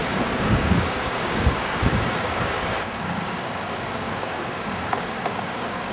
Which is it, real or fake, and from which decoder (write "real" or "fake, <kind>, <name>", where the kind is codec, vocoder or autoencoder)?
fake, codec, DAC